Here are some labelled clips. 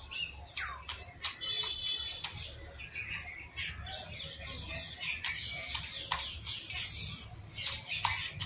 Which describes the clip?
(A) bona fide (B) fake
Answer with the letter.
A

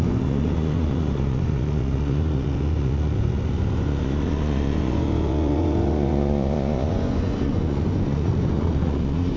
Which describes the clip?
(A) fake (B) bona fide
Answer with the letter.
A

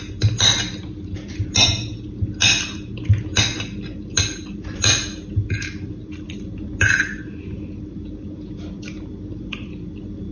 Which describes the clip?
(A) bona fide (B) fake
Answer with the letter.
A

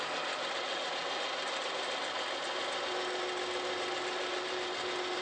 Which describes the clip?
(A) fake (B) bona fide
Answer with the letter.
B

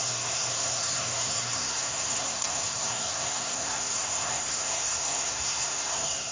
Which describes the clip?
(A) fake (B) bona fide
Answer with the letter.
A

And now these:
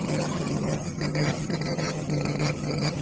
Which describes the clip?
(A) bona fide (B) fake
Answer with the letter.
B